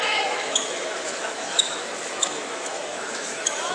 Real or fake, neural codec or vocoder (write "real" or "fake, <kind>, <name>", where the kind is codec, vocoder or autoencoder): fake, autoencoder, DAC-VAE